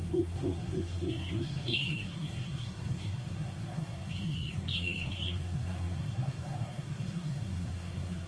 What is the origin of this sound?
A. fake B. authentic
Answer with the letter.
A